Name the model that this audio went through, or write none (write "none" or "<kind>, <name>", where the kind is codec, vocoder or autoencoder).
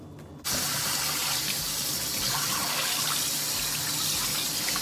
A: none